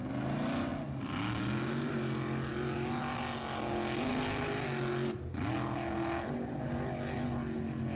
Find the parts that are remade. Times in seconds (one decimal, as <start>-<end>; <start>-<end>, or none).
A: none